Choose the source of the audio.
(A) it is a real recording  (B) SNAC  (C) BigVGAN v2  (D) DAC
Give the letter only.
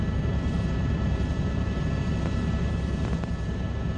C